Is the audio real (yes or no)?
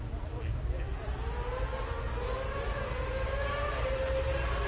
yes